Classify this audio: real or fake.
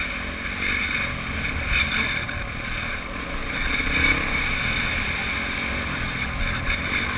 real